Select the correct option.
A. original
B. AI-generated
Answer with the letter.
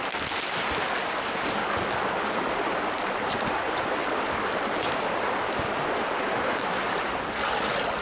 A